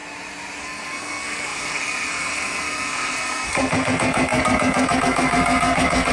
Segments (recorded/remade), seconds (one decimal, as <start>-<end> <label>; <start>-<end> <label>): 0.0-0.6 recorded; 0.6-6.1 remade